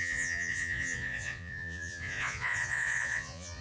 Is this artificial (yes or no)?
yes